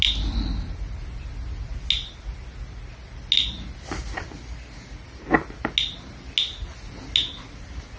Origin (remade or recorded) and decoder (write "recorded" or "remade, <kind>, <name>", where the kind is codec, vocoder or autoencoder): recorded